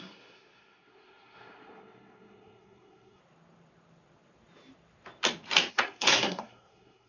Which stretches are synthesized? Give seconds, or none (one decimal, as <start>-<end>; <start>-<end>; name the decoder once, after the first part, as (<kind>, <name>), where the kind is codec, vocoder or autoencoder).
0.0-3.2 (codec, SNAC); 5.7-7.1